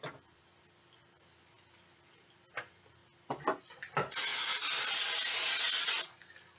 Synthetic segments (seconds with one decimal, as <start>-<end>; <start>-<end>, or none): 0.0-3.0; 3.6-4.3; 5.5-6.6